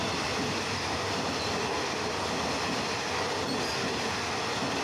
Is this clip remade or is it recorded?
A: recorded